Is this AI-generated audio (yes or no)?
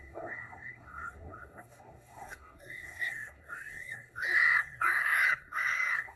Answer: yes